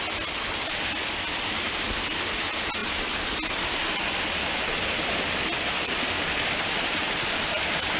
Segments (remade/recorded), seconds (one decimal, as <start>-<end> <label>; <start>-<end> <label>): 0.0-8.0 recorded